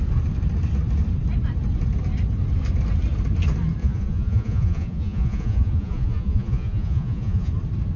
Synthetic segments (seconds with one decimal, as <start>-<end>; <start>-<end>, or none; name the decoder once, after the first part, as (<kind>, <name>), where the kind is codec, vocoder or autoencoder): 3.8-7.5 (vocoder, Vocos)